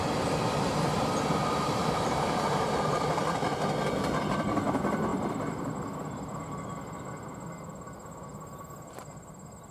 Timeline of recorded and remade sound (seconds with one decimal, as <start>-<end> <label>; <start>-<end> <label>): 0.0-1.4 recorded; 1.4-2.9 remade; 2.9-9.7 recorded